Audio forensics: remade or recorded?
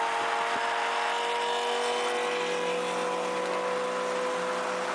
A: recorded